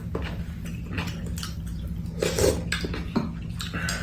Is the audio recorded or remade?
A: recorded